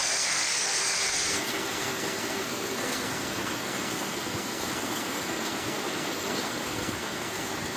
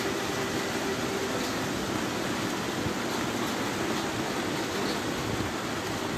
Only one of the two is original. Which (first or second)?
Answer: second